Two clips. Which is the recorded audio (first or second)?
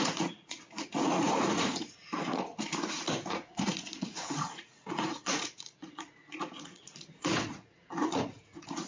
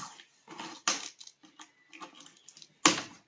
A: second